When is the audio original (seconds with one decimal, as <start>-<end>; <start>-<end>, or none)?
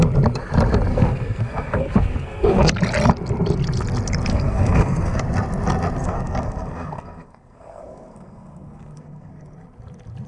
0.0-0.9; 2.7-4.3; 5.2-6.0; 9.3-10.3